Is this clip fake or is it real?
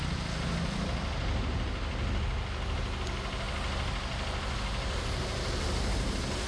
real